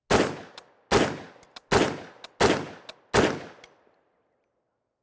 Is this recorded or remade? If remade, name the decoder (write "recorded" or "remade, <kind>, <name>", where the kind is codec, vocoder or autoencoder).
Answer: recorded